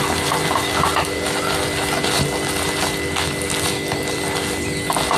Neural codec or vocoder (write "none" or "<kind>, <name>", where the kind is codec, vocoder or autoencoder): none